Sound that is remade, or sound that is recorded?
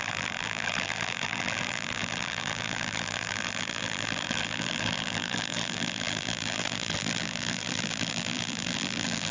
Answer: remade